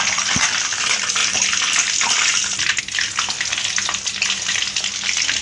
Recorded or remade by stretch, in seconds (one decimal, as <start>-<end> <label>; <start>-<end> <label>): 0.0-5.4 recorded